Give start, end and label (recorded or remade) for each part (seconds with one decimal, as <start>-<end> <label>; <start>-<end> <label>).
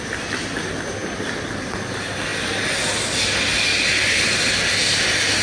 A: 0.0-5.4 recorded